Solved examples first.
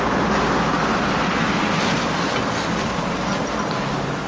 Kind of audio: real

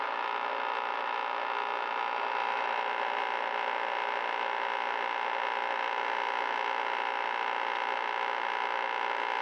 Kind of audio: real